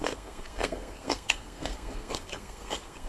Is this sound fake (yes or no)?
yes